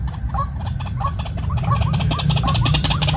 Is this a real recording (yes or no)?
yes